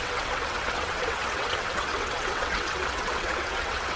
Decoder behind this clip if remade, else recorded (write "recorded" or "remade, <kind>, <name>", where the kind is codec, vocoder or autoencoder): remade, vocoder, WaveNeXt